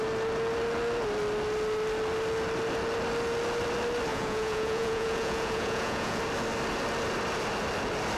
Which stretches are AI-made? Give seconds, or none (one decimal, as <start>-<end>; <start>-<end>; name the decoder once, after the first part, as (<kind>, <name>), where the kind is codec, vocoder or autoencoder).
4.1-6.2 (vocoder, Vocos)